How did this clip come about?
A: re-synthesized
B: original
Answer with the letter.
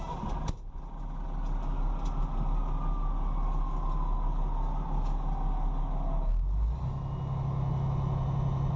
B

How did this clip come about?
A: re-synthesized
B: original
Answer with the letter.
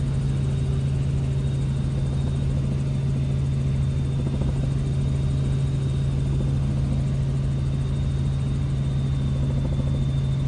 B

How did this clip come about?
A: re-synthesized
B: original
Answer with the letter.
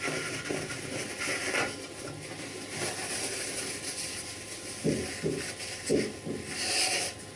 B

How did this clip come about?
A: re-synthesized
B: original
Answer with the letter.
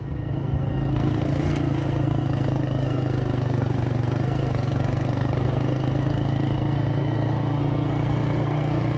A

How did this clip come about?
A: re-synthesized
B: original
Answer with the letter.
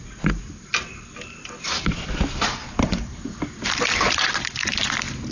B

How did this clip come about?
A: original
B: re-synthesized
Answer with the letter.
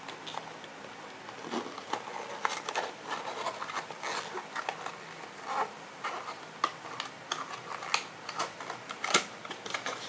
A